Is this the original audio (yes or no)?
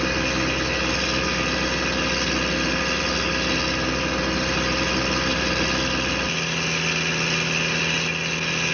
yes